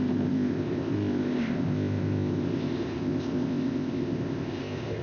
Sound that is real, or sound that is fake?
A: fake